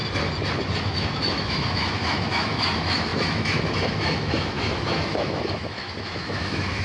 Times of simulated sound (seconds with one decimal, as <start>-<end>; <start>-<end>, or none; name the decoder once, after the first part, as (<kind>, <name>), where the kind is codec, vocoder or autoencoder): 0.8-6.8 (autoencoder, DAC-VAE)